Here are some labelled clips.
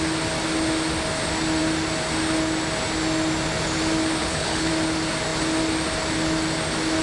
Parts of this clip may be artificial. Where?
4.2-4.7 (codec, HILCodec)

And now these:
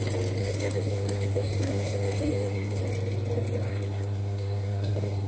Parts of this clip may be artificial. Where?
0.4-2.8 (codec, SNAC); 3.7-5.3

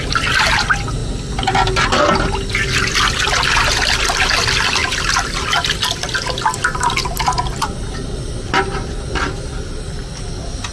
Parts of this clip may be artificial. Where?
none

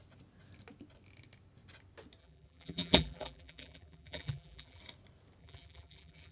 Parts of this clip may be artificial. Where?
2.2-4.8 (vocoder, BigVGAN v2); 5.4-6.3

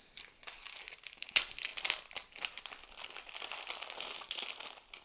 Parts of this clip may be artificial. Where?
none

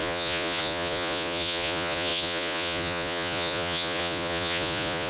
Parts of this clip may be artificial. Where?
0.0-5.1 (vocoder, Vocos)